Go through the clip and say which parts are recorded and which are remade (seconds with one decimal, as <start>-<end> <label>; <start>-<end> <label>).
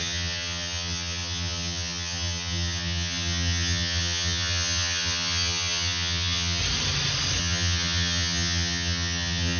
0.0-6.6 remade; 6.6-7.4 recorded; 7.4-9.6 remade